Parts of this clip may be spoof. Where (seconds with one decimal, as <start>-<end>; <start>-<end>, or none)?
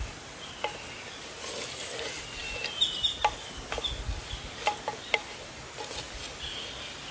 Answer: none